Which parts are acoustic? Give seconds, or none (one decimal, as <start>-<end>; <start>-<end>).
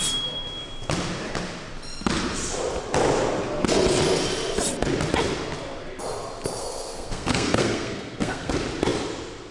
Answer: 0.0-6.6; 8.5-9.5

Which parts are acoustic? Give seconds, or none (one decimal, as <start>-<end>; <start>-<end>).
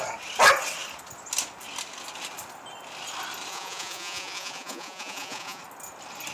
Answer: 0.0-3.5; 5.6-6.3